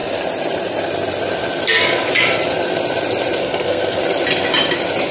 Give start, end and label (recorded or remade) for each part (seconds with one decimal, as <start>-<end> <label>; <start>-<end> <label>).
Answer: 0.0-3.4 recorded; 3.4-4.0 remade; 4.0-5.1 recorded